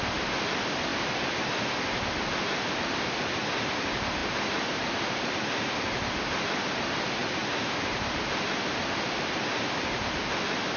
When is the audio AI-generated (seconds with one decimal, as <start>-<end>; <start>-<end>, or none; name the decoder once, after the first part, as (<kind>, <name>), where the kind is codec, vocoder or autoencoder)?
0.9-1.5 (vocoder, BigVGAN v2); 4.2-5.3